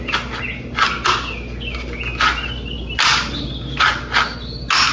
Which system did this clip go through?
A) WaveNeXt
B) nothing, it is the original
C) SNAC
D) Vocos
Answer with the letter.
B